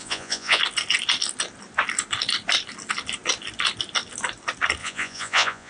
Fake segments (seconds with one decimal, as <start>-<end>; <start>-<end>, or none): 0.0-0.6; 4.8-5.7